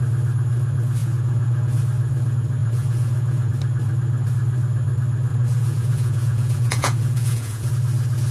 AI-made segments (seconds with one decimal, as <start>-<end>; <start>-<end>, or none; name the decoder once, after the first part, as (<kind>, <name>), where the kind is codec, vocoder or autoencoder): 1.0-1.8 (vocoder, Vocos); 2.6-3.5; 5.3-7.7